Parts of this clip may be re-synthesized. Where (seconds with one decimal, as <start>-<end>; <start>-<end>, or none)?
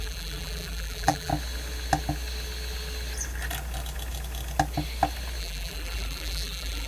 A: 0.0-1.3; 5.4-6.9